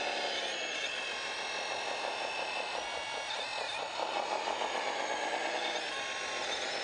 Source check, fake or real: real